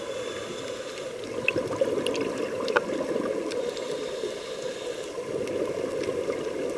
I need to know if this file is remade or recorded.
recorded